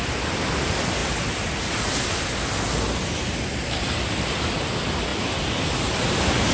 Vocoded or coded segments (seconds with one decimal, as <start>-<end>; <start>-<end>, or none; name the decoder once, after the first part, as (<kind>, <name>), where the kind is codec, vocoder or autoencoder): 5.1-5.7 (vocoder, BigVGAN v2)